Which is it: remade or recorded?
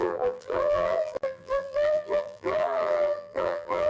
remade